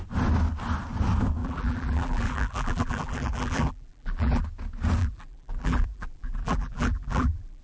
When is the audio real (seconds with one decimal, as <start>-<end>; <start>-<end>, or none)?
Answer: 0.0-1.4; 4.4-5.0